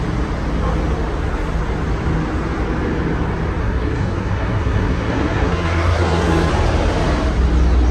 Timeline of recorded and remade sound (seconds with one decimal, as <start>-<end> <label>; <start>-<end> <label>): 0.0-3.6 recorded; 3.6-6.5 remade; 6.5-7.9 recorded